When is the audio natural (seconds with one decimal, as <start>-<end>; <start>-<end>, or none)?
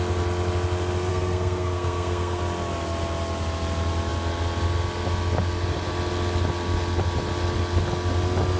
0.0-1.1; 2.4-8.6